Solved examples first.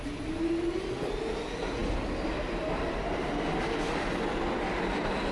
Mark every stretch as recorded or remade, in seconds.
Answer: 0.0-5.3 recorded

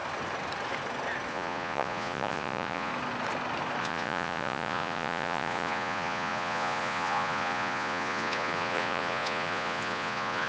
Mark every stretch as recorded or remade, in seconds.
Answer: 0.0-1.3 recorded; 1.3-2.9 remade; 2.9-3.8 recorded; 3.8-10.5 remade